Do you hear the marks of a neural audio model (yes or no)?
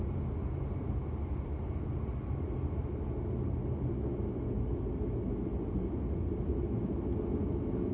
no